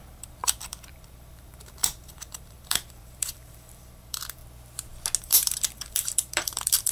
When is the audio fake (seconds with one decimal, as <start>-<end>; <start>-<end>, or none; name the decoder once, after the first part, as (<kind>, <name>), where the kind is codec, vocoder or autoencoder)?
0.0-4.4 (vocoder, BigVGAN v2); 5.2-6.9